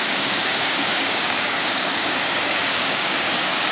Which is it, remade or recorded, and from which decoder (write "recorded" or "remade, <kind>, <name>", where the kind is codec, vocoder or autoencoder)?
remade, codec, DAC